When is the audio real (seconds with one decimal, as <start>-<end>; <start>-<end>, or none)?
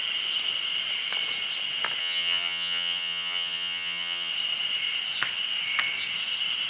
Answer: 0.0-2.0; 4.3-6.7